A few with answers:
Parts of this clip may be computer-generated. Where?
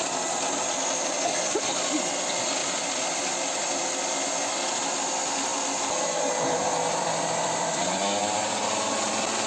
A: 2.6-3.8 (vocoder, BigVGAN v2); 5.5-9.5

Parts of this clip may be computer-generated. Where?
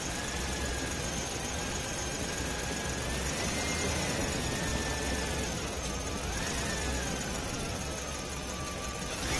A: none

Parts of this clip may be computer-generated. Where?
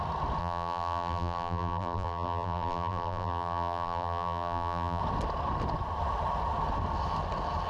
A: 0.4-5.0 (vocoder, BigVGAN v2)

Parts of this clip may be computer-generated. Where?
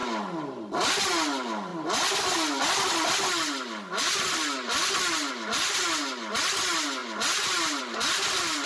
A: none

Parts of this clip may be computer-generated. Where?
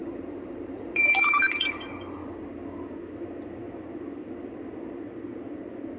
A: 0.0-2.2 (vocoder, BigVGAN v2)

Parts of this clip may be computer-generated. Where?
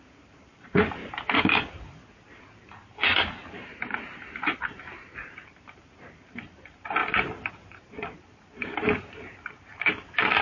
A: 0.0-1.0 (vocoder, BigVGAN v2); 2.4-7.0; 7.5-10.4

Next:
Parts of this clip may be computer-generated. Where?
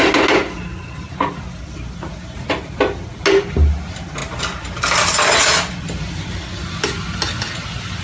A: none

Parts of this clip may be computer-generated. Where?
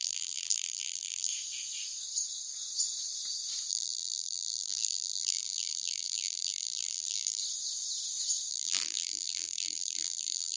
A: 0.0-1.3 (vocoder, BigVGAN v2); 3.7-7.4; 8.5-10.6